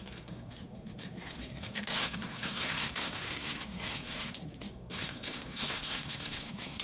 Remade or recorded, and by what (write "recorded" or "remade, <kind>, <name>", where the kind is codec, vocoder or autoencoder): remade, codec, SNAC